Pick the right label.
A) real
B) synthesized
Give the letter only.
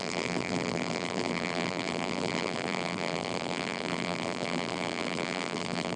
B